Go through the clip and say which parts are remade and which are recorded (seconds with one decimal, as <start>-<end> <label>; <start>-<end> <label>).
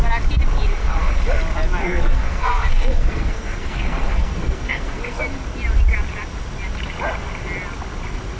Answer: 0.0-0.7 recorded; 0.7-1.2 remade; 1.2-1.8 recorded; 1.8-5.2 remade; 5.2-8.4 recorded